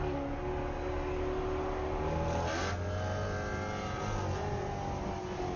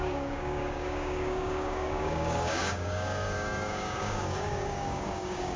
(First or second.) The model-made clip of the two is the second